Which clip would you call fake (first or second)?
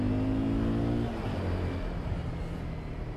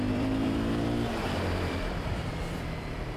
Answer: second